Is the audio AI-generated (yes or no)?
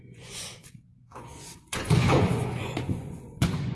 yes